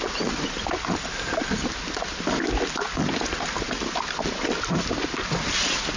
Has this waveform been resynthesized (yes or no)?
no